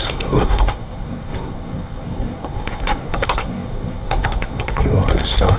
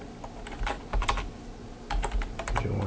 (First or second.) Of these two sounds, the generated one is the first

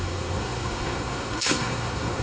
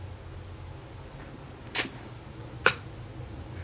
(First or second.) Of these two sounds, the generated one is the first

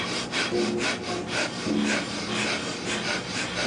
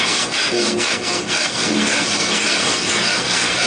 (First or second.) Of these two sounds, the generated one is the second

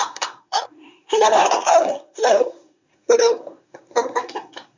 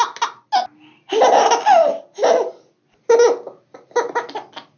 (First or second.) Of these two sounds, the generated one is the first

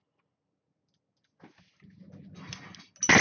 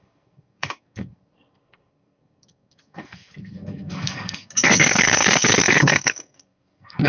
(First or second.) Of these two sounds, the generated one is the second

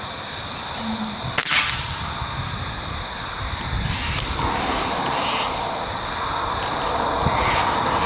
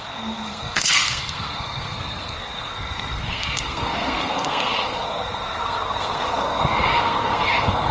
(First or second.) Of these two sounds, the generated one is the second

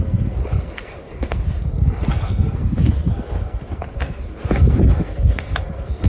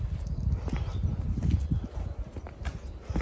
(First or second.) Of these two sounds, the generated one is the first